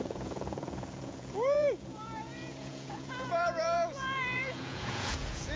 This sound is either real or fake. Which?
fake